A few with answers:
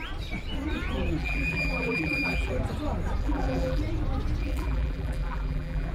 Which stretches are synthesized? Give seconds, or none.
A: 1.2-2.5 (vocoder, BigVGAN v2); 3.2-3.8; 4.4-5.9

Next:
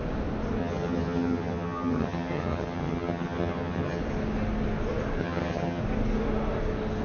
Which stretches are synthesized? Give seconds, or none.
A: 0.6-4.0 (vocoder, HiFi-GAN); 5.2-5.8